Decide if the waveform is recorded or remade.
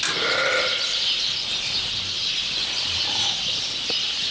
recorded